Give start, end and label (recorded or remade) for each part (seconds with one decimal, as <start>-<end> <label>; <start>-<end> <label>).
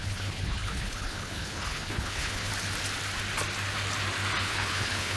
0.0-2.5 remade; 2.5-4.4 recorded; 4.4-5.2 remade